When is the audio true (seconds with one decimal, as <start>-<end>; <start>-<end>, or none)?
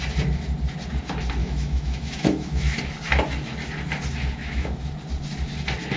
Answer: 0.0-1.4; 2.8-4.4; 4.9-6.0